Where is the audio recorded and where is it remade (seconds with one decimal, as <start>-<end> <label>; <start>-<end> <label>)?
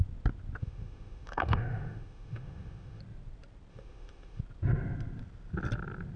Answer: 0.0-0.6 recorded; 0.6-3.0 remade; 3.0-3.7 recorded; 3.7-4.4 remade; 4.4-6.2 recorded